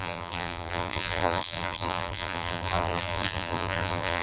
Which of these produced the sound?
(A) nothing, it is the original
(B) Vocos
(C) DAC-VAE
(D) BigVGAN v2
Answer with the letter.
D